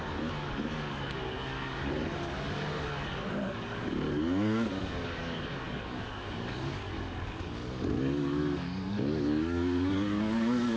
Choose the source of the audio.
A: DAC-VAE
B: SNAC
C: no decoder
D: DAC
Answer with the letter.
D